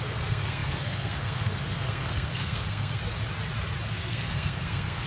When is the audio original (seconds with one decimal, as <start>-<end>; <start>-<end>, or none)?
3.0-3.9